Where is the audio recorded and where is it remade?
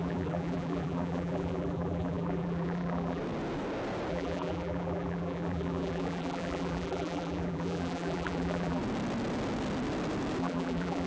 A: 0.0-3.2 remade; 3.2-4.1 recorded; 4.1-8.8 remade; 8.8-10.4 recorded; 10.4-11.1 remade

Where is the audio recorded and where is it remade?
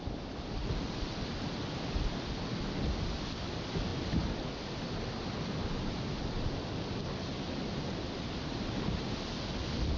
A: 0.0-10.0 recorded